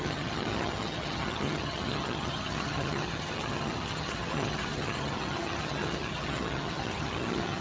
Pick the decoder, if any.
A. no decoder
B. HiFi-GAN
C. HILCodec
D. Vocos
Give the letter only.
B